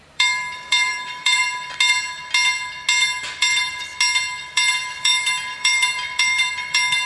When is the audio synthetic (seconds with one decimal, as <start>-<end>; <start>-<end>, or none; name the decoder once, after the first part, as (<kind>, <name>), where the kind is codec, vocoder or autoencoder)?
0.0-1.4 (vocoder, BigVGAN v2); 3.4-3.9; 4.5-7.1